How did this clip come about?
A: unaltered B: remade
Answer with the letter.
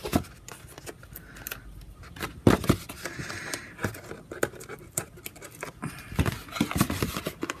A